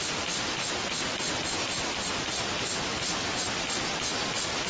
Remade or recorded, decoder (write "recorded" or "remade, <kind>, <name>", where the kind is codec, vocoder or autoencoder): recorded